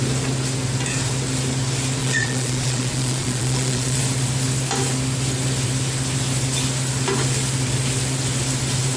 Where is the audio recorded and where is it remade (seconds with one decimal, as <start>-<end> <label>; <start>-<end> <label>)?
0.0-2.0 recorded; 2.0-4.0 remade; 4.0-9.0 recorded